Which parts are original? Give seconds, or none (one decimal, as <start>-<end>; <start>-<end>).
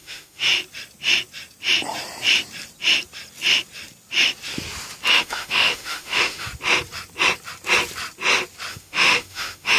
0.5-5.2; 6.5-8.7